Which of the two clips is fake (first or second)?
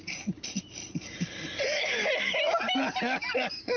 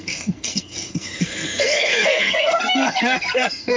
second